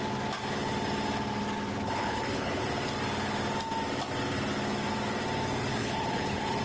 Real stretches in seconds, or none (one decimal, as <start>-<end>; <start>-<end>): 0.0-1.7; 2.6-5.8

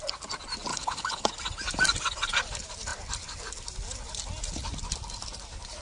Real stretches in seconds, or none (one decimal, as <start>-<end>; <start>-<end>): 0.0-0.7; 1.3-5.8

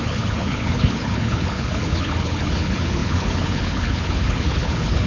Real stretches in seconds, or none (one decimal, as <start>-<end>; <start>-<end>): none

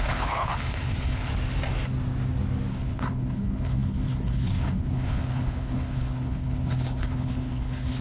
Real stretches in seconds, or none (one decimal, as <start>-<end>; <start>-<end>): 1.3-2.7

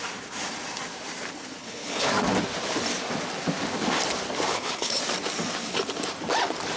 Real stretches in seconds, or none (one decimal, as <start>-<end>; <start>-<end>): 0.0-1.6; 2.1-4.5; 5.0-6.8